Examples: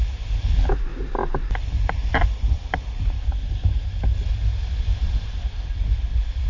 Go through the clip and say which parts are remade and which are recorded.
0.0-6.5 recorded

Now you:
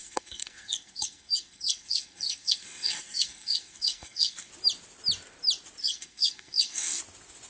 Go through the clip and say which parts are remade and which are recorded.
0.0-4.5 remade; 4.5-5.8 recorded; 5.8-7.0 remade; 7.0-7.5 recorded